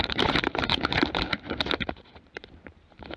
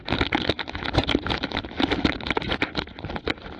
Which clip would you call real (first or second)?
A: second